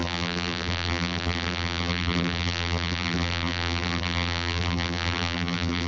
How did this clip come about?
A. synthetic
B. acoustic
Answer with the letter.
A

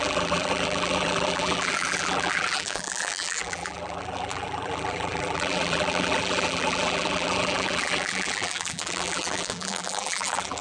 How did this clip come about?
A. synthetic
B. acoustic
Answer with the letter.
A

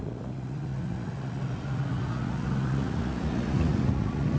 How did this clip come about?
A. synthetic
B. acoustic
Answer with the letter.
A